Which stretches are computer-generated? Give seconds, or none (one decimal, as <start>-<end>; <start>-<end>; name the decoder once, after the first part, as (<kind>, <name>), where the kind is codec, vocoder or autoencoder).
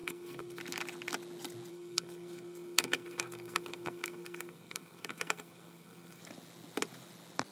0.0-0.6 (codec, SNAC); 1.7-6.2